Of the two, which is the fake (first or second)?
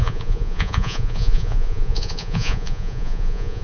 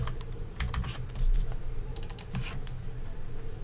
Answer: first